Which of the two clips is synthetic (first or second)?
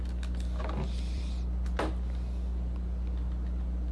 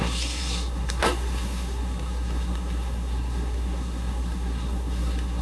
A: second